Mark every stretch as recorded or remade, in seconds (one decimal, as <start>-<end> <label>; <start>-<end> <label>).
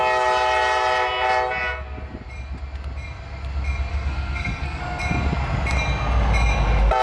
0.0-3.9 recorded; 3.9-4.8 remade; 4.8-7.0 recorded